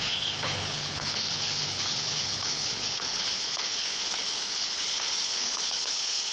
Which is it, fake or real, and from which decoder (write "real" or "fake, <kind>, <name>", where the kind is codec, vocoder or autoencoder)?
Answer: fake, codec, HILCodec